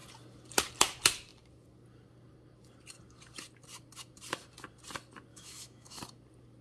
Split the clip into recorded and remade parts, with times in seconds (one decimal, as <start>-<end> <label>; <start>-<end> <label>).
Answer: 0.0-5.3 recorded; 5.3-6.0 remade; 6.0-6.6 recorded